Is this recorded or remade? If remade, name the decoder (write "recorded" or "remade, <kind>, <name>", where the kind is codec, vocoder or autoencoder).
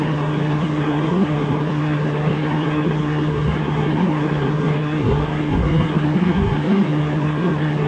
remade, codec, SNAC